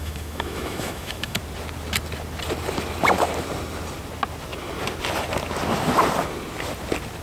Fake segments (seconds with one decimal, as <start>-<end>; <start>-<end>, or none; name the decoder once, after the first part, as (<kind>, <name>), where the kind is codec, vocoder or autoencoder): 0.0-1.4 (autoencoder, DAC-VAE)